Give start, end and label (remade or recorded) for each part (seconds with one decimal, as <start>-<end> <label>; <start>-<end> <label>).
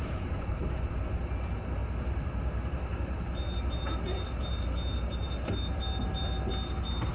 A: 0.0-0.6 remade; 0.6-7.1 recorded